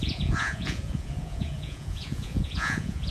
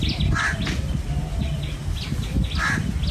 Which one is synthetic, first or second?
first